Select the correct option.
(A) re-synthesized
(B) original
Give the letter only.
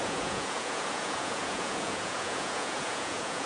A